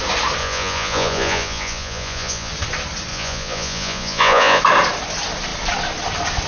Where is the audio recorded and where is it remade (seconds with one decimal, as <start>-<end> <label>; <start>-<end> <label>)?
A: 0.0-0.4 recorded; 0.4-2.5 remade; 2.5-3.1 recorded; 3.1-4.6 remade; 4.6-6.5 recorded